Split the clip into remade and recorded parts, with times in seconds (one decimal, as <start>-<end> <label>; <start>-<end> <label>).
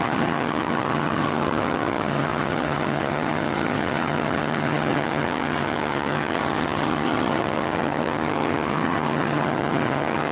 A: 0.0-10.3 remade